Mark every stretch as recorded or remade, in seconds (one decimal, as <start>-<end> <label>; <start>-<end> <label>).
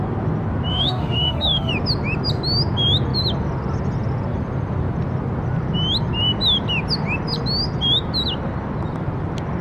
0.0-0.7 recorded; 0.7-1.7 remade; 1.7-9.6 recorded